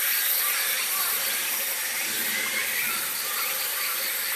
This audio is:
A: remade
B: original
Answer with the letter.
B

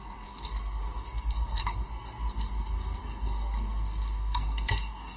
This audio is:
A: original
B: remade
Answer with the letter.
B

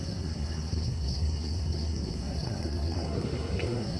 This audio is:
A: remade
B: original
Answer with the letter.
A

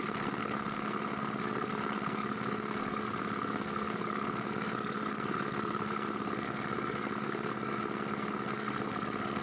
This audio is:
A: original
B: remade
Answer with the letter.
B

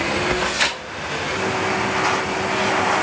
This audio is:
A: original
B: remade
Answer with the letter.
A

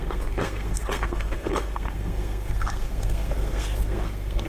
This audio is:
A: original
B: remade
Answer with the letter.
B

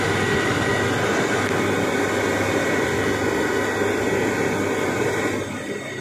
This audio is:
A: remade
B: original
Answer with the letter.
B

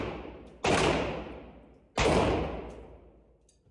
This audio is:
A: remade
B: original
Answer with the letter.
B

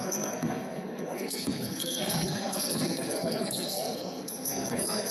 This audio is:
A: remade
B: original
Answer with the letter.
A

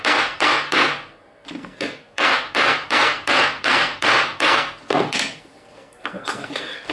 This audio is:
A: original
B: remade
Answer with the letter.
B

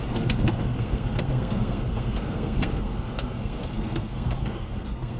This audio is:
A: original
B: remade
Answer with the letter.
B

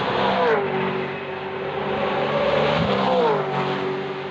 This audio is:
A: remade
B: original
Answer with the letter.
B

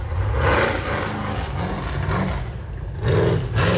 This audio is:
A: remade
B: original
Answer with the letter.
B